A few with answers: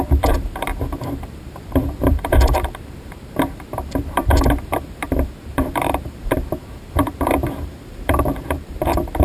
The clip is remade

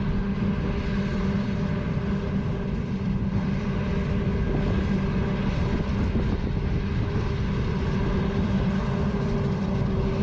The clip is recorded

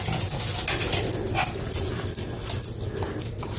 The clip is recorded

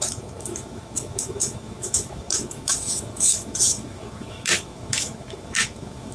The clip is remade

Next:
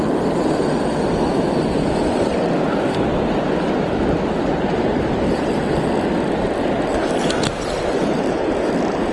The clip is recorded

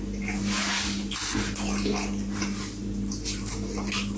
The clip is recorded